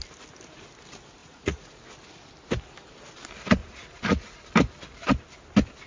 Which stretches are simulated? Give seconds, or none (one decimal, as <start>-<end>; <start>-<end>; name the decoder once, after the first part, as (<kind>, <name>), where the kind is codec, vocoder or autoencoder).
1.2-1.8 (vocoder, Vocos); 3.6-4.4